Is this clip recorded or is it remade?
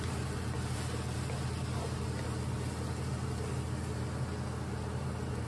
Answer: recorded